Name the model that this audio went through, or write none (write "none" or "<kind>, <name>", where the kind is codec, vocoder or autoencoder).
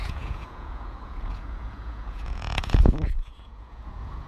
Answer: vocoder, Vocos